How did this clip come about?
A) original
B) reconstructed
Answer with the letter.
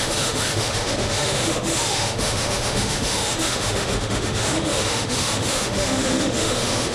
B